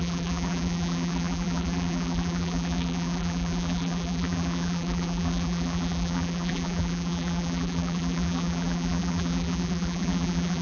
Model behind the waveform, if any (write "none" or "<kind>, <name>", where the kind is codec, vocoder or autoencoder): vocoder, BigVGAN v2